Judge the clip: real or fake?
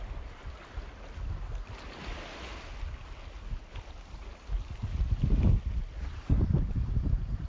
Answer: real